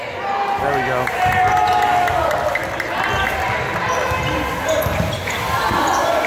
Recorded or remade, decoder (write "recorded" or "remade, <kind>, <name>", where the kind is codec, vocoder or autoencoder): recorded